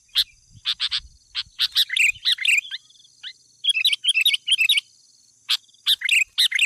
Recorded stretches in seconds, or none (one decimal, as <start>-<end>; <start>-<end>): 0.0-6.7